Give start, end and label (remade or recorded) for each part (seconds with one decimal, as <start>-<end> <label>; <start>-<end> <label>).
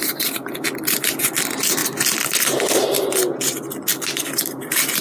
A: 0.0-5.0 recorded